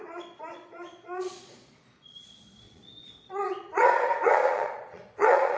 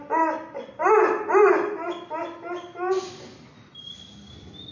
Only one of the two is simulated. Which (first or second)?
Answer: first